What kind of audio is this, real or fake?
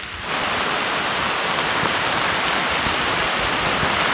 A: real